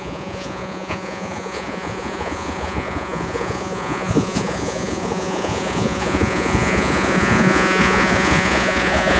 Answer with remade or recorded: remade